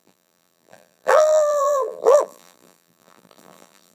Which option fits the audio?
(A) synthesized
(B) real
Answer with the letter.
A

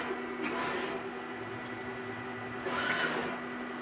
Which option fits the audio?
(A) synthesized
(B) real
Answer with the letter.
B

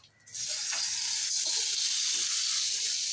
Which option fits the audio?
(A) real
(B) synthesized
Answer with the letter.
A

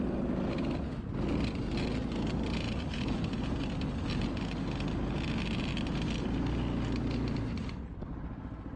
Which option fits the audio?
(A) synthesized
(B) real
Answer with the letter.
B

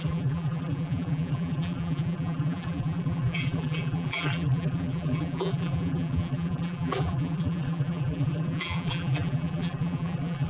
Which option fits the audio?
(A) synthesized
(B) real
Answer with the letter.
A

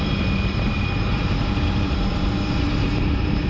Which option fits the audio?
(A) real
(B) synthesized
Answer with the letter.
B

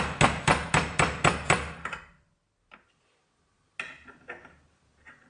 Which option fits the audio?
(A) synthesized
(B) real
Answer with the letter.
B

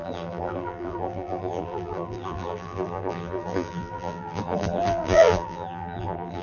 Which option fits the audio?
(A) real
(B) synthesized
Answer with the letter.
B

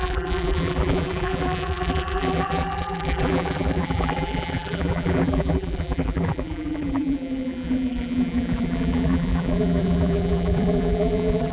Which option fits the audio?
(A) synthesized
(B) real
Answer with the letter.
A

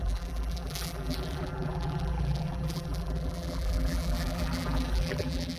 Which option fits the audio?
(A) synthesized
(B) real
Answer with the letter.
A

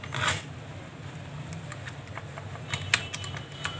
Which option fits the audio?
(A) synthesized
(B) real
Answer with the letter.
B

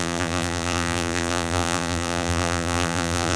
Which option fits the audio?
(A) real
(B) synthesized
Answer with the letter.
B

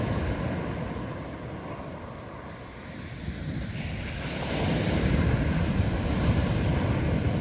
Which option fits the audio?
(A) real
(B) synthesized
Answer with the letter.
B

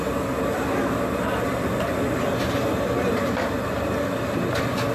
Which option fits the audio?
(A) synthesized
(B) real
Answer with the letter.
B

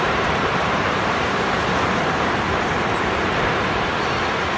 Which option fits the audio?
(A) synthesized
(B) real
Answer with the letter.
A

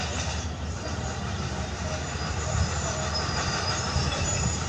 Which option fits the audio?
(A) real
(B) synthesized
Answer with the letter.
B